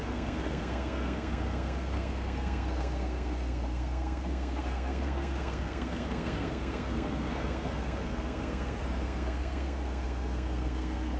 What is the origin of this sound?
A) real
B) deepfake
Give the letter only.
B